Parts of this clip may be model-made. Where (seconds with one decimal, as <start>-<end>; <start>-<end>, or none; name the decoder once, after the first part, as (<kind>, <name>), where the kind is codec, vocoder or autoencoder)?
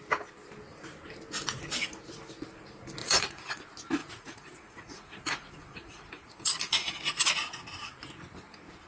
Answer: 3.0-3.6 (vocoder, Vocos); 4.0-7.3